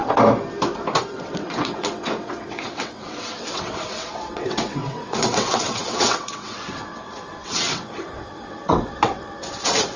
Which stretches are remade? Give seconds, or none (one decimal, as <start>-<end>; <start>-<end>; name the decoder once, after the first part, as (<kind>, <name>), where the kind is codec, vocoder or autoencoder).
1.0-10.0 (vocoder, WaveNeXt)